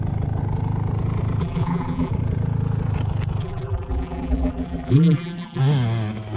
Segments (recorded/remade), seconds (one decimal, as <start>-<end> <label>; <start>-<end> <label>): 0.0-1.4 recorded; 1.4-2.1 remade; 2.1-3.4 recorded; 3.4-5.6 remade; 5.6-6.4 recorded